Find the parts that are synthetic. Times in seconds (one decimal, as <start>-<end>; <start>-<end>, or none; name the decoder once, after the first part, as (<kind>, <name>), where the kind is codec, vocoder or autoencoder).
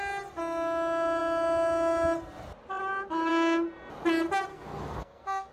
4.5-5.5 (codec, SNAC)